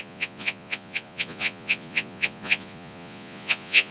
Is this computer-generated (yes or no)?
yes